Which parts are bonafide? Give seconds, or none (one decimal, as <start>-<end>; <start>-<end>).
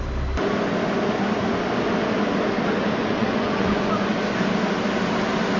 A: 0.0-3.0; 3.9-5.6